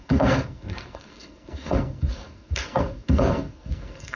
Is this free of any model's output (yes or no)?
no